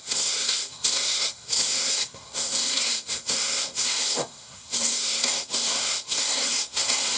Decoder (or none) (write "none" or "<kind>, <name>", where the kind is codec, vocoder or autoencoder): codec, SNAC